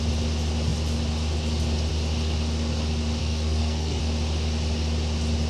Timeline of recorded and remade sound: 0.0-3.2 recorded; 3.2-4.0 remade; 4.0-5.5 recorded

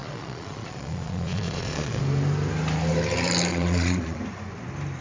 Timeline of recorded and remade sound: 0.0-2.0 remade; 2.0-3.5 recorded; 3.5-4.2 remade; 4.2-5.0 recorded

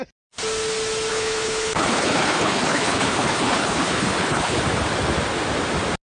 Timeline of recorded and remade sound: 0.0-1.1 recorded; 1.1-4.6 remade; 4.6-6.1 recorded

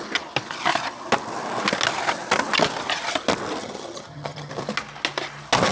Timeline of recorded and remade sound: 0.0-3.6 recorded; 3.6-4.5 remade; 4.5-5.7 recorded